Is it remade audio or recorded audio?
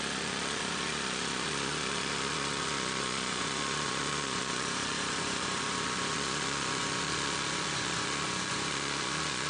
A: remade